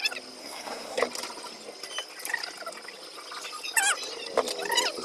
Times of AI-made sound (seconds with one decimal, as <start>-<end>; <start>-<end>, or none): 0.4-1.0